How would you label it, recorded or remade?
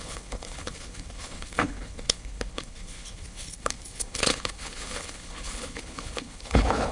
remade